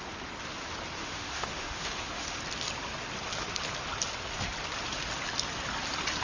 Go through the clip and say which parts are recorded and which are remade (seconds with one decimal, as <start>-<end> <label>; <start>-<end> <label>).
0.0-1.0 recorded; 1.0-2.4 remade; 2.4-6.2 recorded